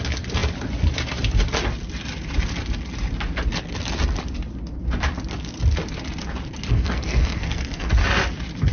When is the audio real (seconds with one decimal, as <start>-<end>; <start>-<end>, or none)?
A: 0.0-6.7; 7.9-8.7